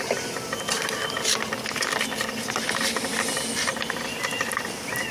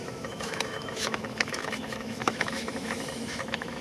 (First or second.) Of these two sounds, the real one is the first